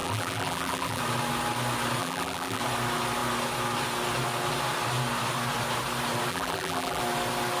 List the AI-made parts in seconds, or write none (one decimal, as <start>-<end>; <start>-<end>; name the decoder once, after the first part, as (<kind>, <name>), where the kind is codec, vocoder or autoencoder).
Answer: 0.0-1.0 (vocoder, BigVGAN v2); 2.0-2.6; 6.3-7.0